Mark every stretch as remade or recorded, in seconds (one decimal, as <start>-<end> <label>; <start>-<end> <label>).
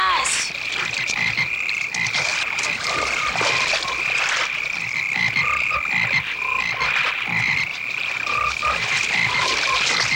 0.0-10.2 recorded